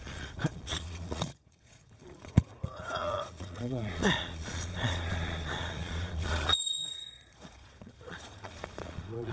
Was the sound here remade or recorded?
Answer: remade